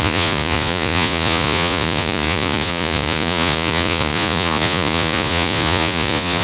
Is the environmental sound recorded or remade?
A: remade